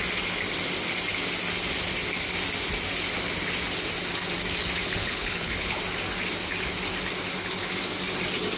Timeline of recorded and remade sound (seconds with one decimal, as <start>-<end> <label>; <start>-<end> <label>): 0.0-5.0 recorded; 5.0-5.8 remade; 5.8-8.6 recorded